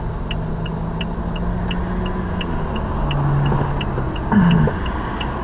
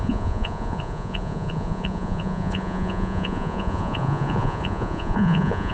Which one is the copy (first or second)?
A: second